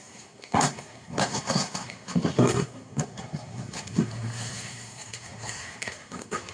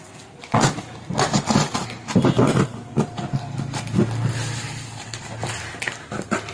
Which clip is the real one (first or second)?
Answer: second